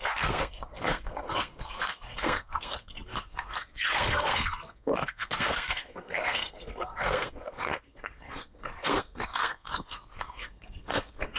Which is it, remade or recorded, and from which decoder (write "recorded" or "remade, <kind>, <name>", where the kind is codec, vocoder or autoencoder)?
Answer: remade, codec, SNAC